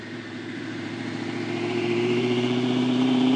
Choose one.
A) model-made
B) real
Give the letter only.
A